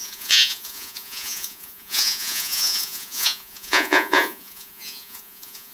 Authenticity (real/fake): fake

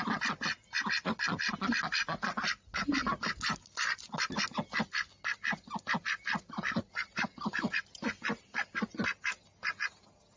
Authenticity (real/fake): real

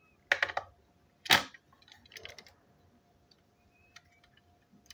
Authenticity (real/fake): real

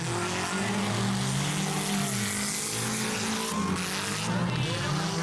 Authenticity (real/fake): real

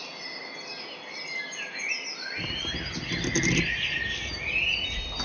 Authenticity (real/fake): real